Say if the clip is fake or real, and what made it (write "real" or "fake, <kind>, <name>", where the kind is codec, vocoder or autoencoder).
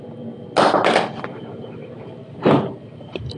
real